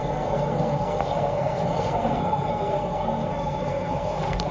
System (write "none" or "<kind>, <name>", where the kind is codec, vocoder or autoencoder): codec, SNAC